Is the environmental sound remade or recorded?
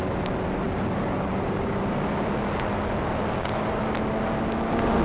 recorded